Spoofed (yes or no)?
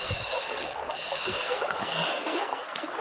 yes